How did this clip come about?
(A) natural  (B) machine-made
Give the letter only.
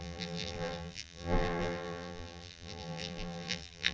B